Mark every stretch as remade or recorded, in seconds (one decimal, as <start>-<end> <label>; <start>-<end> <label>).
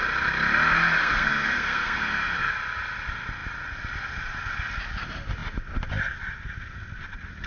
0.0-1.0 recorded; 1.0-2.5 remade; 2.5-7.5 recorded